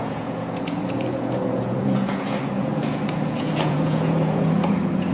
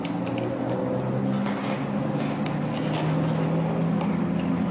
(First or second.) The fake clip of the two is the first